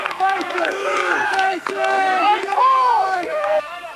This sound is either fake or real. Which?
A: fake